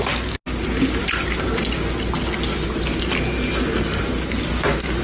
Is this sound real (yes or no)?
yes